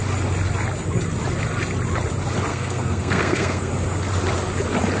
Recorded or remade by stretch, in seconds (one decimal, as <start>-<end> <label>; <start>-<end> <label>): 0.0-2.5 recorded; 2.5-3.7 remade; 3.7-5.0 recorded

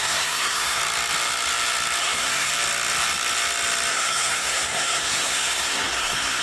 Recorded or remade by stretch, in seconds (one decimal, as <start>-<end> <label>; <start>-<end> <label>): 0.0-0.8 remade; 0.8-2.0 recorded; 2.0-2.5 remade; 2.5-3.9 recorded; 3.9-6.4 remade

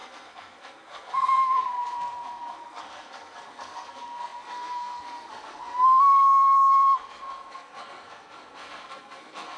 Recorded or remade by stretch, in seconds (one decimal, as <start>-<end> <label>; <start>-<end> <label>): 0.0-9.6 remade

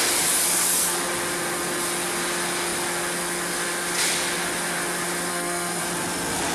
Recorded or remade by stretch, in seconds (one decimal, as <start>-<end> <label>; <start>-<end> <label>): 0.0-0.5 recorded; 0.5-1.0 remade; 1.0-5.3 recorded; 5.3-5.8 remade; 5.8-6.5 recorded